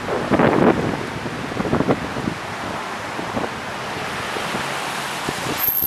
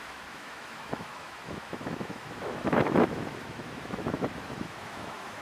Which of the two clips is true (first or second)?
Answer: first